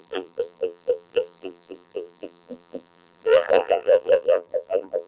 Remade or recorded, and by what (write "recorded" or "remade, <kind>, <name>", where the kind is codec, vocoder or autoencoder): remade, vocoder, BigVGAN v2